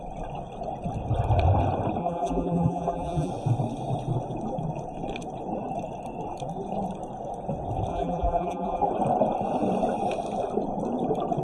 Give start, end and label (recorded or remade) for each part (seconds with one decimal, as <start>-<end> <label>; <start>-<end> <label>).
0.0-2.0 recorded; 2.0-3.3 remade; 3.3-7.9 recorded; 7.9-8.9 remade; 8.9-11.4 recorded